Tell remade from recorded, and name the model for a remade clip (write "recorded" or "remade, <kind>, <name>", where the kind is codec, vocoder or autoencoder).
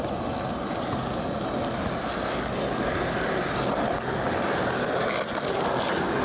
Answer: recorded